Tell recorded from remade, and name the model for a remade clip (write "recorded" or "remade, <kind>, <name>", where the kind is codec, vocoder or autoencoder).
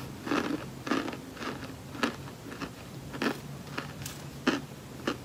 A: recorded